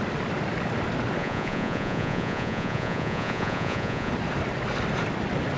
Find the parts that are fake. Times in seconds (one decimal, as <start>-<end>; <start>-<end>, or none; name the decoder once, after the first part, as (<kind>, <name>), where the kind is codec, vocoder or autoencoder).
1.2-4.1 (vocoder, Vocos)